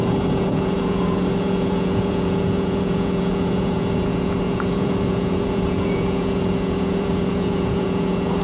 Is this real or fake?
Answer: fake